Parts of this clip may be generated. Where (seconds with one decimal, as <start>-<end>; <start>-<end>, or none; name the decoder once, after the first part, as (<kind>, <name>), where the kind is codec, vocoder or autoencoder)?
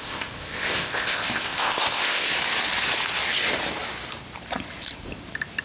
0.0-2.3 (codec, ZipCodec)